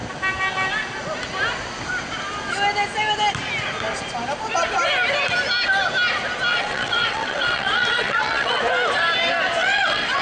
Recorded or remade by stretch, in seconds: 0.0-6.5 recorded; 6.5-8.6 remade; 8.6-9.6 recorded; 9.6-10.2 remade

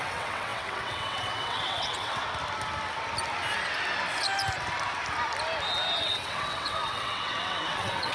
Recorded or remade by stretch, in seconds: 0.0-2.2 remade; 2.2-6.0 recorded; 6.0-8.1 remade

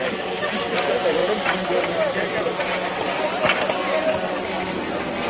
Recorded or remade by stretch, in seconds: 0.0-5.3 recorded

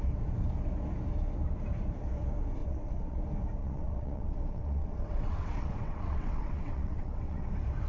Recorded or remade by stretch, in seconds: 0.0-2.6 recorded; 2.6-3.2 remade; 3.2-3.6 recorded; 3.6-7.5 remade; 7.5-7.9 recorded

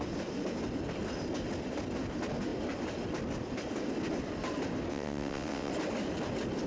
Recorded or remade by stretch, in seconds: 0.0-4.9 recorded; 4.9-5.7 remade; 5.7-6.7 recorded

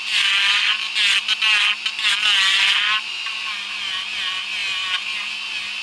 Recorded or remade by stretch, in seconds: 0.0-5.8 recorded

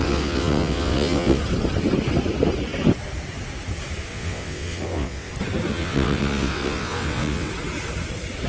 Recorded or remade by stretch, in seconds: 0.0-1.4 remade; 1.4-4.1 recorded; 4.1-5.3 remade; 5.3-5.7 recorded; 5.7-7.5 remade; 7.5-8.5 recorded

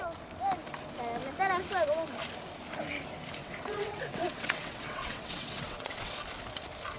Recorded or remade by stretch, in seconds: 0.0-3.4 recorded; 3.4-6.1 remade; 6.1-7.0 recorded